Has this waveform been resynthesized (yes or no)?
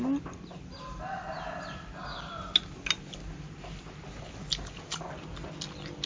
no